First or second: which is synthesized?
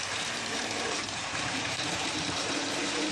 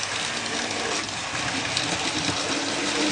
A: first